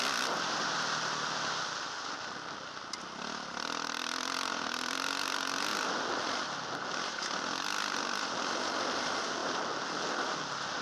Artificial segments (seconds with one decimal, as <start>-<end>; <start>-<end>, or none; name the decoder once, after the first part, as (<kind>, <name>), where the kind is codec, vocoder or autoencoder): none